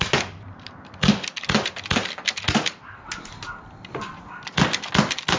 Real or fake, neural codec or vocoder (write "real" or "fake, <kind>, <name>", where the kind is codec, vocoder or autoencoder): real